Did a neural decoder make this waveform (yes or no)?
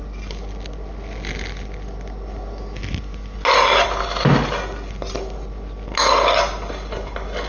no